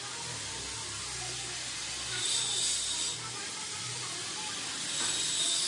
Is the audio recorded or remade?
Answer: recorded